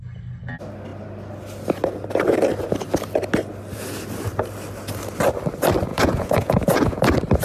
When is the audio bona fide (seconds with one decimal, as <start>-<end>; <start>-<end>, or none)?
0.0-5.9; 7.0-7.4